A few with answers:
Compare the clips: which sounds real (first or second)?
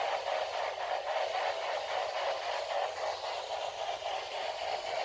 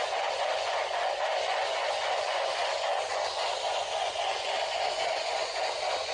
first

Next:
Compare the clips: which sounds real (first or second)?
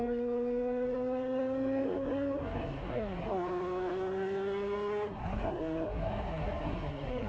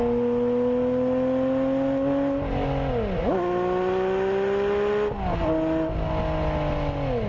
second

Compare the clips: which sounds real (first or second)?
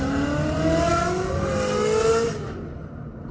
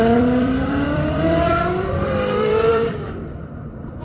first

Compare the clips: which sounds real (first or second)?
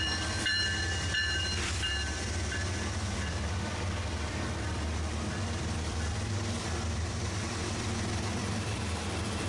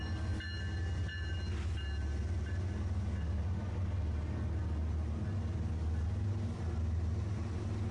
second